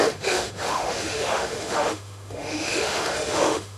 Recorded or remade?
remade